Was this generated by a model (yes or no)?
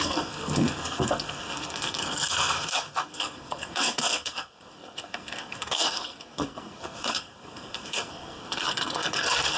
yes